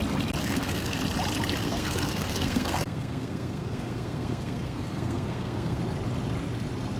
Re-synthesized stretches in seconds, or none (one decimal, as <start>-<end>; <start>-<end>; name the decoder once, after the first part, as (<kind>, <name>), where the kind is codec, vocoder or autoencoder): 0.4-1.0 (codec, SNAC); 1.6-5.8